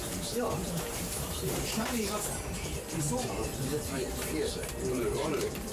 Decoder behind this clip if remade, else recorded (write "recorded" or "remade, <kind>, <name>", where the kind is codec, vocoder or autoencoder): remade, vocoder, BigVGAN v2